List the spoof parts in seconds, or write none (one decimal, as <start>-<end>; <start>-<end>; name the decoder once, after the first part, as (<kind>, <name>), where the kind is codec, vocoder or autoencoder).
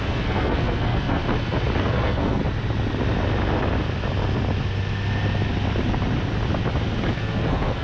0.0-1.2 (codec, SNAC); 1.8-2.4; 7.1-7.8